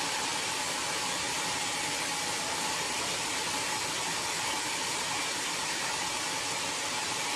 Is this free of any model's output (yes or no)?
yes